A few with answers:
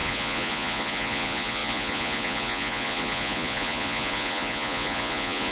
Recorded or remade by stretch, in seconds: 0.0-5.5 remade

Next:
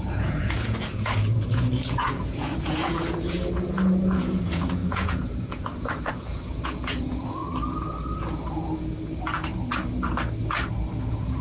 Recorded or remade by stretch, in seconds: 0.0-7.4 remade; 7.4-11.0 recorded; 11.0-11.4 remade

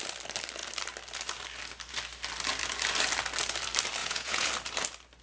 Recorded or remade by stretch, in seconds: 0.0-4.0 recorded; 4.0-4.5 remade; 4.5-5.2 recorded

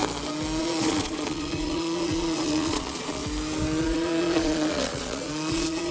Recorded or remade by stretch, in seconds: 0.0-0.6 recorded; 0.6-3.2 remade; 3.2-3.8 recorded; 3.8-5.9 remade

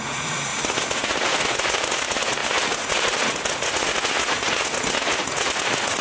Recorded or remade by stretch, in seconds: 0.0-6.0 remade